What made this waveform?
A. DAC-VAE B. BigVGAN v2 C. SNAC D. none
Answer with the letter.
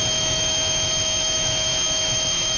A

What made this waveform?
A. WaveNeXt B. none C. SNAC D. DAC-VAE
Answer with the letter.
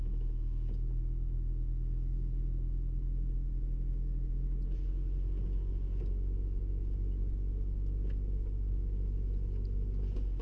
B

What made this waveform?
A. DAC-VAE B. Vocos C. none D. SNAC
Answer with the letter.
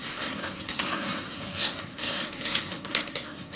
D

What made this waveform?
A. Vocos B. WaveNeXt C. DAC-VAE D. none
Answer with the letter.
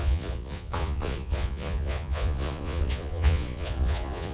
A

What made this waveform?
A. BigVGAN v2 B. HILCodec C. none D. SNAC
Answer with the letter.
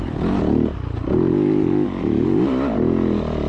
C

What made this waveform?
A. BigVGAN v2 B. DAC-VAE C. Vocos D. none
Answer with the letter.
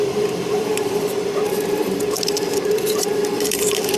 A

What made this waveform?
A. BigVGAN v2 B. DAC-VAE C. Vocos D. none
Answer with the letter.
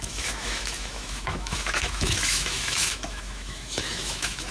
B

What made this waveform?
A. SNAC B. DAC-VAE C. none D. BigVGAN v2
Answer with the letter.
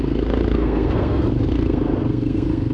A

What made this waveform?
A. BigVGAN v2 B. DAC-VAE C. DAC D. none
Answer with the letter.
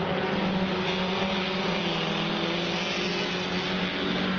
D